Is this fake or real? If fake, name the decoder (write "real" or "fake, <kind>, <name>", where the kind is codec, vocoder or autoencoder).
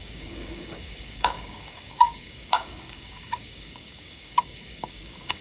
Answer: fake, codec, DAC